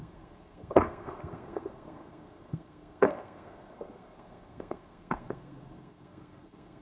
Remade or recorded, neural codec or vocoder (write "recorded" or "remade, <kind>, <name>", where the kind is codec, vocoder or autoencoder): remade, codec, SNAC